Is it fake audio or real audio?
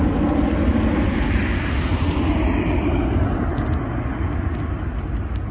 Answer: real